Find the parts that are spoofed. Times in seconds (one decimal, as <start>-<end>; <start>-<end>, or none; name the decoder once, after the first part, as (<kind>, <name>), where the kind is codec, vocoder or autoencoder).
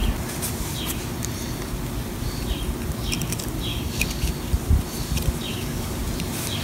3.7-4.3 (codec, DAC); 5.5-6.0